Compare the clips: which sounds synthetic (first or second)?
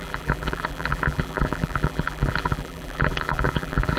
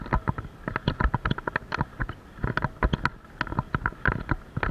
first